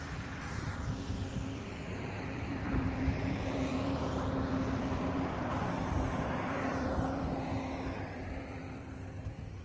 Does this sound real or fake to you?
fake